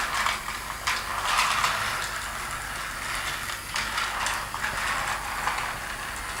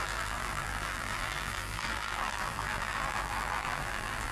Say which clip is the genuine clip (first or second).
first